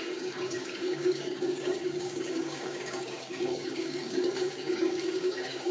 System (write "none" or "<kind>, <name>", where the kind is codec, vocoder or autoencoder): codec, DAC